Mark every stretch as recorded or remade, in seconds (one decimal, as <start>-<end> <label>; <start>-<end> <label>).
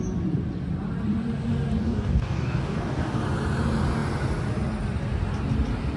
0.0-1.8 recorded; 1.8-3.2 remade; 3.2-6.0 recorded